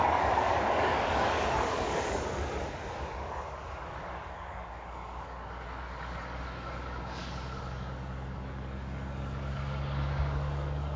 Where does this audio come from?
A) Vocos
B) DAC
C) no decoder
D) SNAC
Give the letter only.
B